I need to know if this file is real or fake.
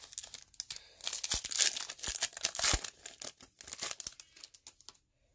real